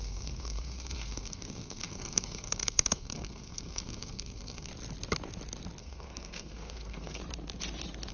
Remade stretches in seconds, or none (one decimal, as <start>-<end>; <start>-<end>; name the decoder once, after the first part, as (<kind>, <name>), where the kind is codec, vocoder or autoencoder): 0.0-4.7 (codec, SNAC); 5.8-7.2